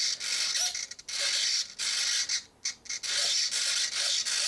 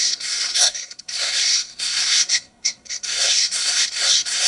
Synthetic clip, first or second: second